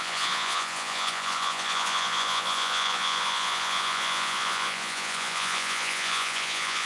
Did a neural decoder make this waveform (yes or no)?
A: yes